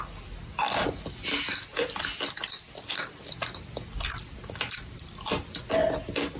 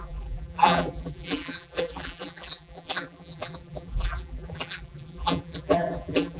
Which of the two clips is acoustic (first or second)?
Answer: first